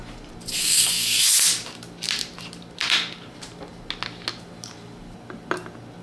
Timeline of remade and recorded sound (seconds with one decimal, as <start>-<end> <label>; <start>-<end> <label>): 0.0-0.6 recorded; 0.6-1.2 remade; 1.2-6.0 recorded